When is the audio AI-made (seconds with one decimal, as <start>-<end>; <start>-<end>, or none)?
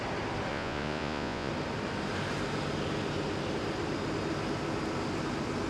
0.5-1.5